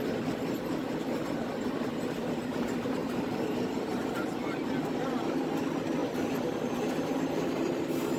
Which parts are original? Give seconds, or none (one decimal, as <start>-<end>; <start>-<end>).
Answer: 0.0-3.0; 4.1-6.0

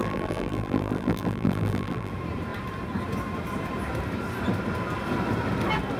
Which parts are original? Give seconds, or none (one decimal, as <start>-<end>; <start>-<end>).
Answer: 2.1-6.0

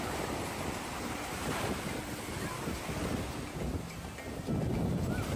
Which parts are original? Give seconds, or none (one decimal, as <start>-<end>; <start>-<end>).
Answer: 2.1-4.7